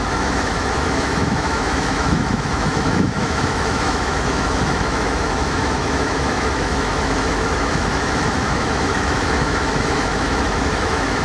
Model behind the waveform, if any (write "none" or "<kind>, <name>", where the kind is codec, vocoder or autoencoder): autoencoder, DAC-VAE